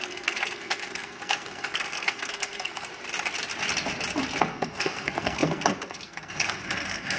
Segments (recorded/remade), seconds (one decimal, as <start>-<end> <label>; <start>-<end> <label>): 0.0-2.9 remade; 2.9-4.4 recorded; 4.4-7.2 remade